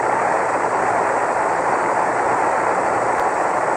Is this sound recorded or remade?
remade